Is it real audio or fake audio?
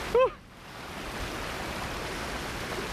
real